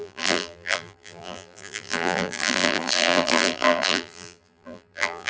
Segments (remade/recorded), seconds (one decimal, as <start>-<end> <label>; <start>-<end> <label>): 0.0-5.3 remade